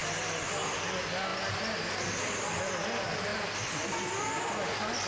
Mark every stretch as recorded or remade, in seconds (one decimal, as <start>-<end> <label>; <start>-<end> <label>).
0.0-5.1 recorded